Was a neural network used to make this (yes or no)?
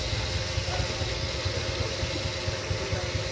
no